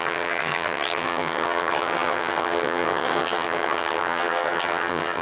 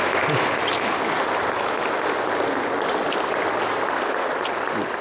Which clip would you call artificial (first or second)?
first